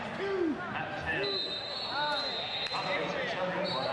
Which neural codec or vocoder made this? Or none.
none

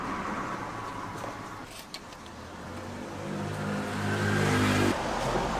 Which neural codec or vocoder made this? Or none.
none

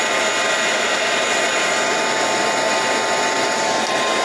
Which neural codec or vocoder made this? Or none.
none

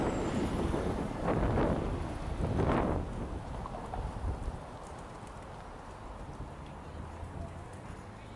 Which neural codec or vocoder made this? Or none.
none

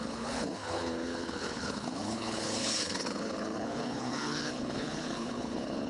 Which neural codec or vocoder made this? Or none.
codec, HILCodec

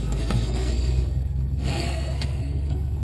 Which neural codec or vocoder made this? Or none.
codec, SNAC